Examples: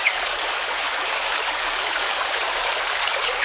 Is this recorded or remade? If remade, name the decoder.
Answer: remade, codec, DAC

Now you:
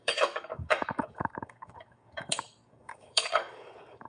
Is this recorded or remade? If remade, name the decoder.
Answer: remade, codec, DAC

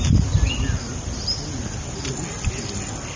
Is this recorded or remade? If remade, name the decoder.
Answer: recorded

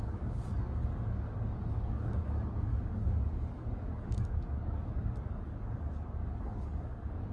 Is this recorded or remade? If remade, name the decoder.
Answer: remade, codec, DAC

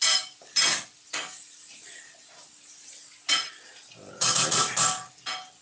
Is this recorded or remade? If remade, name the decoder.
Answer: recorded